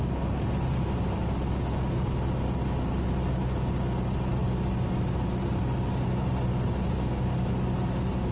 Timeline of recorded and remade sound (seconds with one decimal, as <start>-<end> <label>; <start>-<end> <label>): 0.0-8.3 recorded